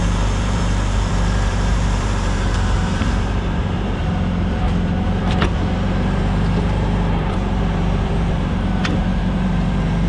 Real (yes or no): no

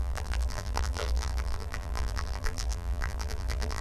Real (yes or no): no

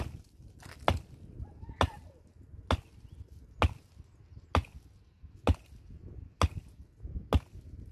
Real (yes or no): yes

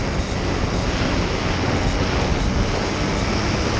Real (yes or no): yes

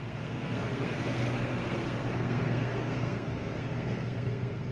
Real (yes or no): no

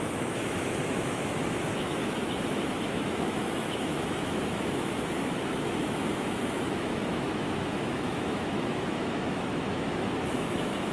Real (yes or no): no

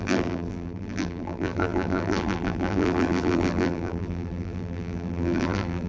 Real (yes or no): no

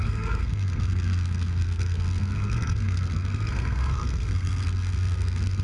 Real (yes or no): no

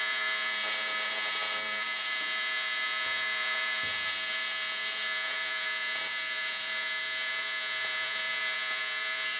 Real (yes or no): no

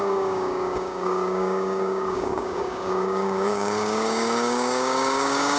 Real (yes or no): no